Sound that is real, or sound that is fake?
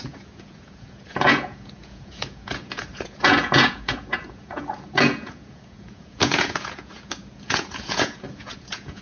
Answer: fake